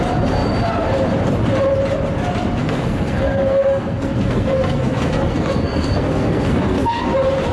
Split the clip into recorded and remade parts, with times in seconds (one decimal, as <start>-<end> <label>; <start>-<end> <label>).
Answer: 0.0-2.6 recorded; 2.6-7.1 remade; 7.1-7.5 recorded